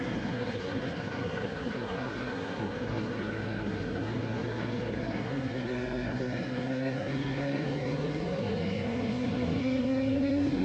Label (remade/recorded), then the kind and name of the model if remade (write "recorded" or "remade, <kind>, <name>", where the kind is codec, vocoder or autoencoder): remade, codec, SNAC